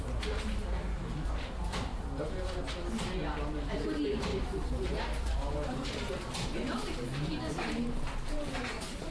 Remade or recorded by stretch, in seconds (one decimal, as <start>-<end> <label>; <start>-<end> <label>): 0.0-1.9 remade; 1.9-3.5 recorded; 3.5-9.1 remade